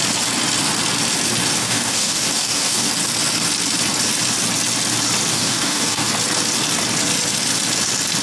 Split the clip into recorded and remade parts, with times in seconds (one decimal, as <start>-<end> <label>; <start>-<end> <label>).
0.0-1.6 recorded; 1.6-2.9 remade; 2.9-5.3 recorded; 5.3-6.1 remade; 6.1-8.2 recorded